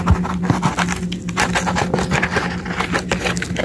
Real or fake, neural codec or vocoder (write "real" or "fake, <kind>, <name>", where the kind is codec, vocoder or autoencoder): real